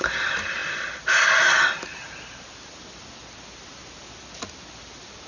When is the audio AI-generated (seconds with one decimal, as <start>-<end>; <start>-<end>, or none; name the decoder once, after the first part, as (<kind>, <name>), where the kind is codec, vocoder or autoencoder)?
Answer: none